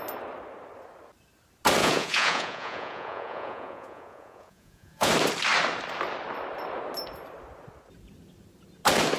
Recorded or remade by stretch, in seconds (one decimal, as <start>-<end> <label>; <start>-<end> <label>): 0.0-1.8 recorded; 1.8-5.1 remade; 5.1-9.2 recorded